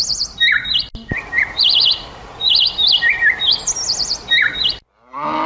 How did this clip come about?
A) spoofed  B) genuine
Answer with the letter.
B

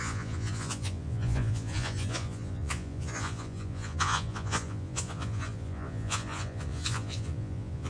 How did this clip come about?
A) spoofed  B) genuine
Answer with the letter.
A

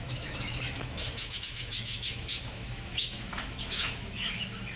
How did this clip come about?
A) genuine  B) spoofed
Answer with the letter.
B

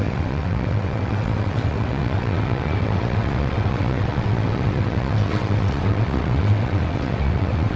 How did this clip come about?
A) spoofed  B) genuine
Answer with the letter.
A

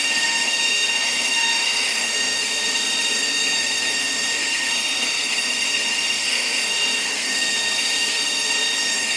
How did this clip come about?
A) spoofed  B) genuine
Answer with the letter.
A